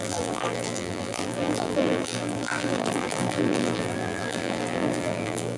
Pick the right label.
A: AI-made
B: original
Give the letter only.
A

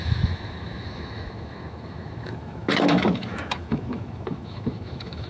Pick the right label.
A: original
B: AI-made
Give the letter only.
B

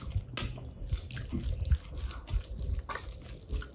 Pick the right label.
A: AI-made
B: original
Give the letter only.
B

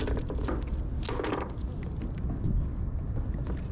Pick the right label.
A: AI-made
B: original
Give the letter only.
B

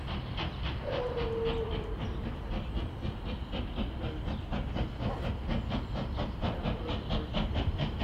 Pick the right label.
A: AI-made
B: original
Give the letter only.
B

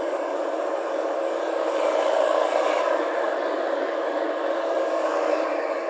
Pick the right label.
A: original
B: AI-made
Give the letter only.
B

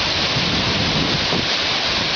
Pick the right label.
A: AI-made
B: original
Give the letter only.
B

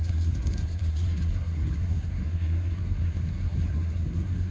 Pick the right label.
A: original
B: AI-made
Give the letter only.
B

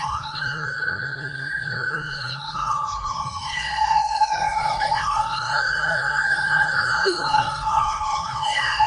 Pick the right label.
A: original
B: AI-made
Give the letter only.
B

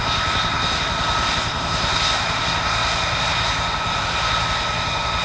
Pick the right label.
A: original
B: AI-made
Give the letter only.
A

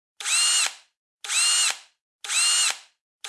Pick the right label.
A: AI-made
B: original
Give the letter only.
B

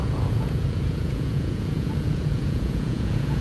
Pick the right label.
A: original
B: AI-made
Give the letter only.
B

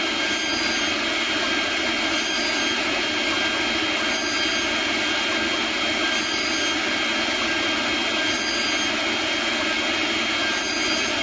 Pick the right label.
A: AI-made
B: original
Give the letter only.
B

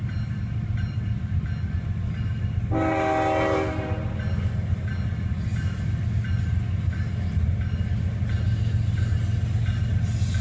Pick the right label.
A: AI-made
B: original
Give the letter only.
B